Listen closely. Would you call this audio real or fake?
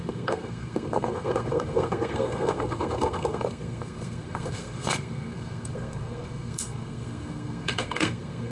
fake